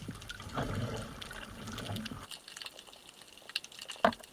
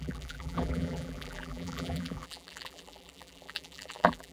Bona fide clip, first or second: first